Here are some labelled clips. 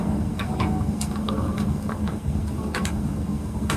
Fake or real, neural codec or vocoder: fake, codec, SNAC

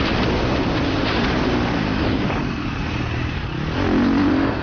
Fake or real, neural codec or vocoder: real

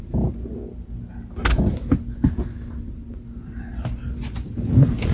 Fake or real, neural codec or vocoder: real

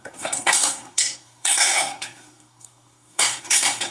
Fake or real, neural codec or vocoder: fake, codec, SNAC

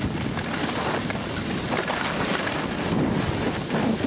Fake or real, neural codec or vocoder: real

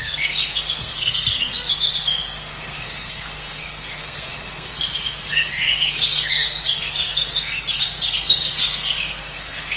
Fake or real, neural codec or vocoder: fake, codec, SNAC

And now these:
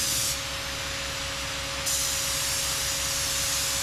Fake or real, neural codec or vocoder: real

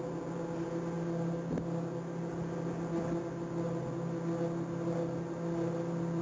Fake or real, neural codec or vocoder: real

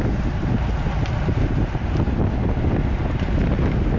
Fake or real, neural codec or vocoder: real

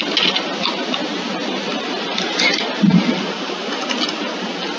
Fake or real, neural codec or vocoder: real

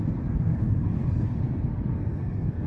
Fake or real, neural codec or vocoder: fake, codec, SNAC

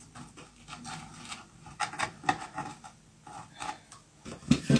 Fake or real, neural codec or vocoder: real